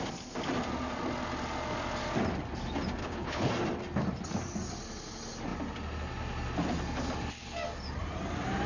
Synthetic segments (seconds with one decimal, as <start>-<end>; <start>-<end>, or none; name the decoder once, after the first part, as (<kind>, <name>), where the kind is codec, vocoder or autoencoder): 3.0-3.5 (codec, HILCodec)